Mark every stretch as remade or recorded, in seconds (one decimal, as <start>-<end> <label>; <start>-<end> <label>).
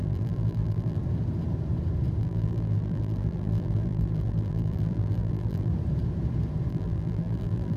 0.0-1.0 remade; 1.0-2.2 recorded; 2.2-5.7 remade; 5.7-6.7 recorded; 6.7-7.8 remade